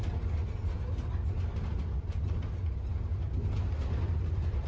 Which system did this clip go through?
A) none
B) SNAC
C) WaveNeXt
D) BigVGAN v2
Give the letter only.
A